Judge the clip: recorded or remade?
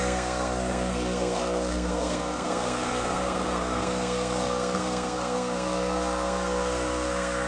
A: remade